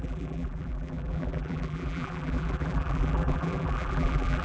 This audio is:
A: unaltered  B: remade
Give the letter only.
B